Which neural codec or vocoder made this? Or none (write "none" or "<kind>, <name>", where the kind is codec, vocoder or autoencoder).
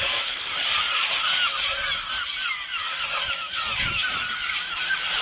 none